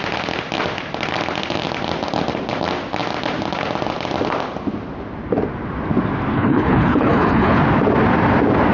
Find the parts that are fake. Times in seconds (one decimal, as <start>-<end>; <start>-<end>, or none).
6.3-7.6